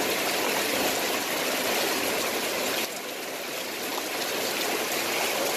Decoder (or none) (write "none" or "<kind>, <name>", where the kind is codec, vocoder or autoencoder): none